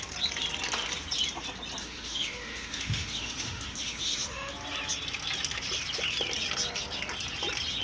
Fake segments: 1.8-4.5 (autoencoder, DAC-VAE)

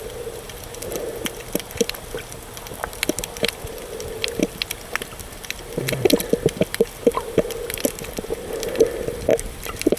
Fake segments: none

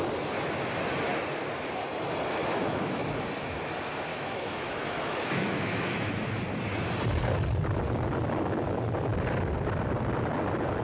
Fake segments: 2.4-3.1 (autoencoder, DAC-VAE); 4.1-6.1

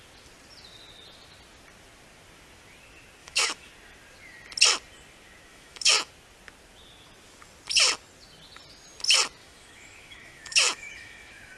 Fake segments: 3.2-3.7 (autoencoder, DAC-VAE); 5.5-6.1; 9.4-11.6

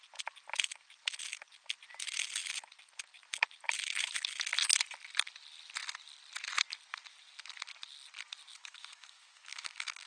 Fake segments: 8.5-10.1 (autoencoder, DAC-VAE)

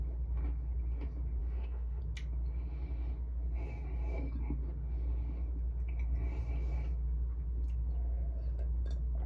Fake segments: 1.4-2.0 (autoencoder, DAC-VAE)

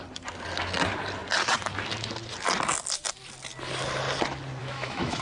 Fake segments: 4.6-5.2 (autoencoder, DAC-VAE)